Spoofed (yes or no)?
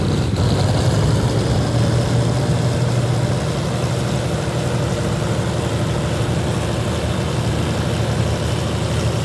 no